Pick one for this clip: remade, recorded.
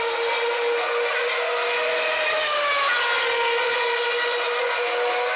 recorded